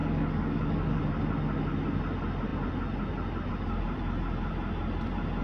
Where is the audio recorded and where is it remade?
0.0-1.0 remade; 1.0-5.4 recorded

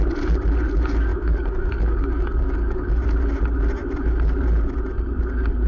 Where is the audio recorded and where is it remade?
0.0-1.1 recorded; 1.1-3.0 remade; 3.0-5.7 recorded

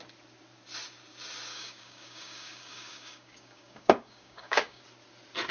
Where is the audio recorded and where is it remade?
0.0-1.5 recorded; 1.5-4.8 remade; 4.8-5.5 recorded

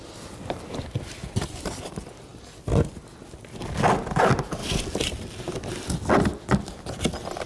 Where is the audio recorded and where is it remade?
0.0-7.5 recorded

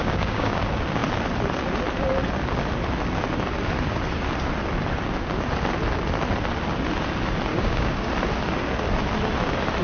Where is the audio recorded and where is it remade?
0.0-0.6 remade; 0.6-7.5 recorded; 7.5-8.1 remade; 8.1-9.8 recorded